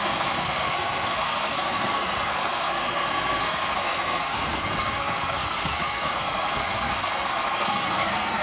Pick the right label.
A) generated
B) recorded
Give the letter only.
A